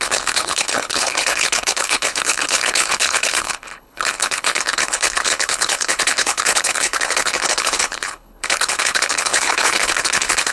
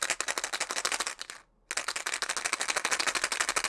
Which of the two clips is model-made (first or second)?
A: first